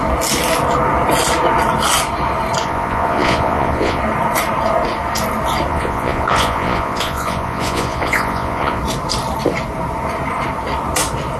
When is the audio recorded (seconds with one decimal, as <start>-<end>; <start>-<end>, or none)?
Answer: 0.0-2.6; 4.0-5.7; 8.8-11.4